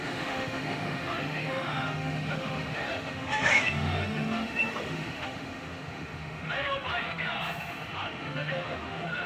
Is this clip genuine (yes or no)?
no